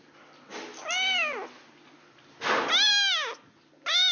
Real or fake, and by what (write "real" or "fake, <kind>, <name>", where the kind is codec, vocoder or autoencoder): real